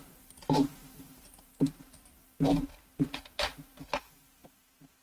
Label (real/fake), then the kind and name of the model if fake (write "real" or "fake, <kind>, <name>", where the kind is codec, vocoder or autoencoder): real